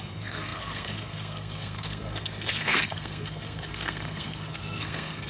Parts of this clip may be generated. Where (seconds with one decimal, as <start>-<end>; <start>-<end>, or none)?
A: 0.0-5.3